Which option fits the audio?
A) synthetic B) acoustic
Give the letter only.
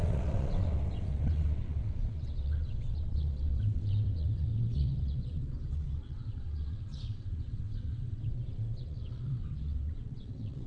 A